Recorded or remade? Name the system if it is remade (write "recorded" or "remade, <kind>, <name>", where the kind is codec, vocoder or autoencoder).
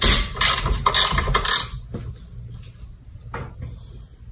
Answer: recorded